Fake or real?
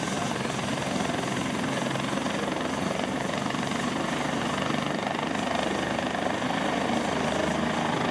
real